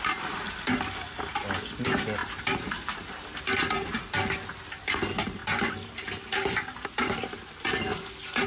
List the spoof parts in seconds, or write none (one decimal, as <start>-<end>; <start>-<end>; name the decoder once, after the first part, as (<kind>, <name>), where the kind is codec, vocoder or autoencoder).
none